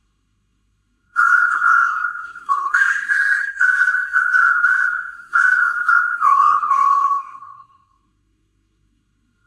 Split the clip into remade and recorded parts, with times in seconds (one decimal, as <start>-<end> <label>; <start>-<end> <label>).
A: 0.0-9.5 remade